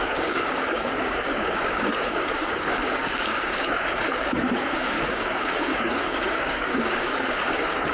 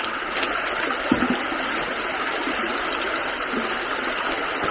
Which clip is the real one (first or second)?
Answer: second